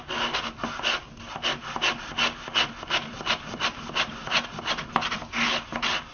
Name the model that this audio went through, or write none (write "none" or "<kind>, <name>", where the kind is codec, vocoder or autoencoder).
none